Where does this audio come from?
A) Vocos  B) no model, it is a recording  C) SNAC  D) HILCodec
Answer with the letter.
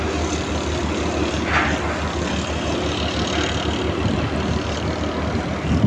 B